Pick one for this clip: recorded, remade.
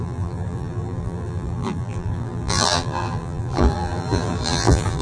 remade